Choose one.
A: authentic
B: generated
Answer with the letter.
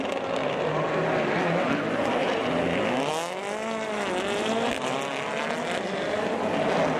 A